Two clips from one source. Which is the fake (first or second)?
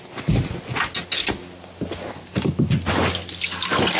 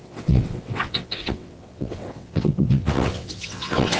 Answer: second